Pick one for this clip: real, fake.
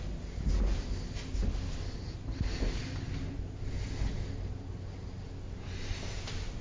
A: real